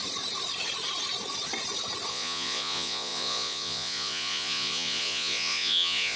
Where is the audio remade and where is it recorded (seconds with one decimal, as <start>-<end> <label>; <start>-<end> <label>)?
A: 0.0-2.1 recorded; 2.1-6.2 remade